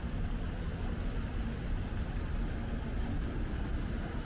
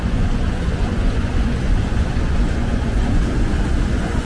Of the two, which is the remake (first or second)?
second